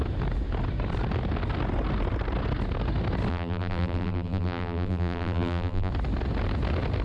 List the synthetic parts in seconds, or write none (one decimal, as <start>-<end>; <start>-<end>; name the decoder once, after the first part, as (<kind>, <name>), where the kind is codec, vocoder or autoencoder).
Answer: 3.3-5.9 (vocoder, BigVGAN v2)